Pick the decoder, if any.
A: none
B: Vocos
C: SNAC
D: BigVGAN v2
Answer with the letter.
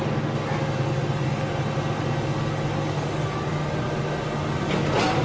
A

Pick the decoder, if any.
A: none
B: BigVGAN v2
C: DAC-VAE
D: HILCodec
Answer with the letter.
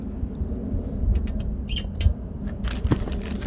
A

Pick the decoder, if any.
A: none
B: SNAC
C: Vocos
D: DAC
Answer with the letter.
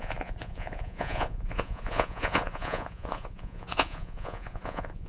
C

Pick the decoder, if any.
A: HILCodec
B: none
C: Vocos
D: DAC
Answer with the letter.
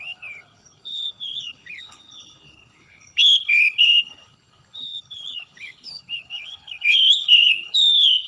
A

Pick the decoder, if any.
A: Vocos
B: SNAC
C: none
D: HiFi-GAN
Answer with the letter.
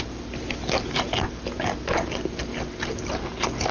C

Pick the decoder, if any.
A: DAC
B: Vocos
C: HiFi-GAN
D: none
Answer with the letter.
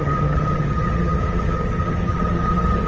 C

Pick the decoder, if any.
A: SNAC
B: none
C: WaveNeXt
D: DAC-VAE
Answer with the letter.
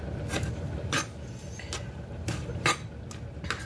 B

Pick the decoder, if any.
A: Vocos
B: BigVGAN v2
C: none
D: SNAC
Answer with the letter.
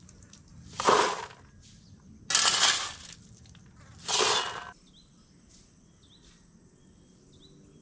C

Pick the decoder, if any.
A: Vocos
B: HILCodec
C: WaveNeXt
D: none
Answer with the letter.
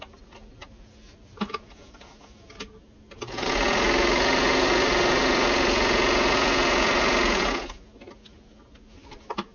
D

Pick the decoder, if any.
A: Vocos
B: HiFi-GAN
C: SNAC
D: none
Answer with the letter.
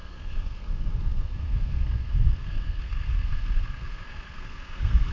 C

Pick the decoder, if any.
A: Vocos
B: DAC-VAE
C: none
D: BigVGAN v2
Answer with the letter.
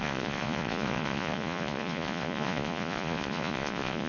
A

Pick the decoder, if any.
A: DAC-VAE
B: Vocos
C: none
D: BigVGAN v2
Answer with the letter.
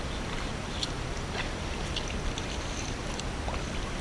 C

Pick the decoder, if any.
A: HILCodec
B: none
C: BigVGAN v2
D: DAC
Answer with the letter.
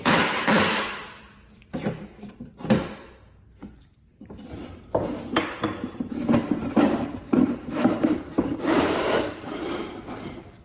C